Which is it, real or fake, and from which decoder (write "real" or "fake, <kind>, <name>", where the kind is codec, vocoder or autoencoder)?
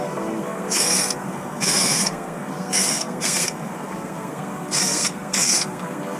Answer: fake, codec, SNAC